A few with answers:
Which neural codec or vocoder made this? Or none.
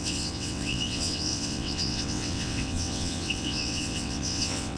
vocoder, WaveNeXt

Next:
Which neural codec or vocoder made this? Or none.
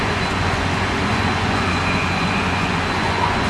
vocoder, Vocos